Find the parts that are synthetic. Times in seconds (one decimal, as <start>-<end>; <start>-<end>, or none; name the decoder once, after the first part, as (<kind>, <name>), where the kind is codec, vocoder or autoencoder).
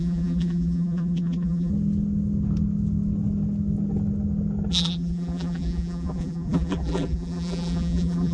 0.0-1.7 (vocoder, BigVGAN v2); 4.7-8.3